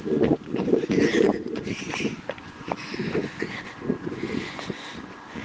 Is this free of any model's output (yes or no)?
no